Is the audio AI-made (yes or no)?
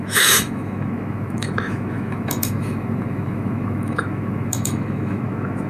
yes